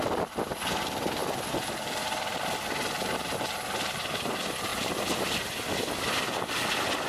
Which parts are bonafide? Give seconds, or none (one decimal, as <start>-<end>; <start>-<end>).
0.0-7.1